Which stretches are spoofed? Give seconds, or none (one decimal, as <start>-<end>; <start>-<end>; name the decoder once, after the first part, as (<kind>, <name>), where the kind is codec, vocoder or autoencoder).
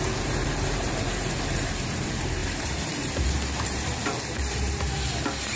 0.0-5.6 (vocoder, BigVGAN v2)